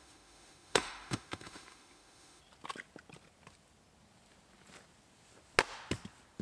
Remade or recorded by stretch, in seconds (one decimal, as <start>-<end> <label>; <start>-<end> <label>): 0.0-2.4 remade; 2.4-6.4 recorded

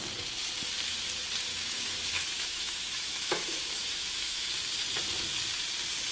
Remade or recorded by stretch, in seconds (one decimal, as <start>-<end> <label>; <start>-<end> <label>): 0.0-1.5 recorded; 1.5-4.5 remade; 4.5-6.1 recorded

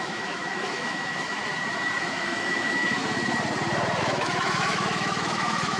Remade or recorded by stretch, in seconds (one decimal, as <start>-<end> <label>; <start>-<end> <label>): 0.0-1.4 remade; 1.4-2.0 recorded; 2.0-3.0 remade; 3.0-4.0 recorded; 4.0-5.8 remade

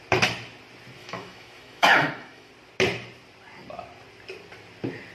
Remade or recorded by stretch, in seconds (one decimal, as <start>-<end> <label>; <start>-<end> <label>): 0.0-1.0 recorded; 1.0-2.5 remade; 2.5-5.1 recorded